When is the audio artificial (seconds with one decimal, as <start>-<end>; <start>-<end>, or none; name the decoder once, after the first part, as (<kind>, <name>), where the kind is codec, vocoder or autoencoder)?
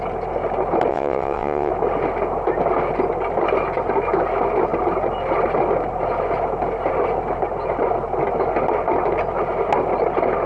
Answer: 0.9-1.7 (vocoder, WaveNeXt)